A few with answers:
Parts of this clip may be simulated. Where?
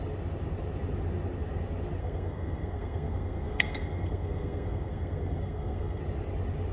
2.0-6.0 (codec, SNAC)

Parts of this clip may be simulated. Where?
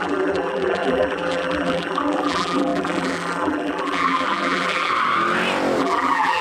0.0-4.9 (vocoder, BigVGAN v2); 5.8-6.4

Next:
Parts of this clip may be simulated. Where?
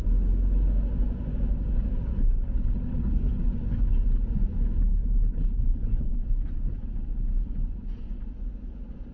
2.1-3.4 (codec, HILCodec); 4.9-6.2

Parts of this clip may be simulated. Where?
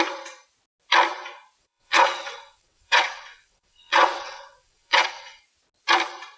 1.6-5.4 (vocoder, WaveNeXt)